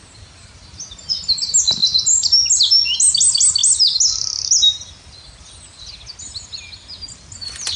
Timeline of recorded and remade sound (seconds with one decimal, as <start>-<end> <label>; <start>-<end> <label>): 0.0-7.8 recorded